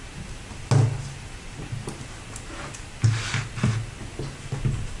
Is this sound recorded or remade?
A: recorded